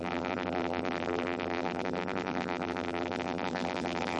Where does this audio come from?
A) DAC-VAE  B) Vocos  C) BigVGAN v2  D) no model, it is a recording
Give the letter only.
C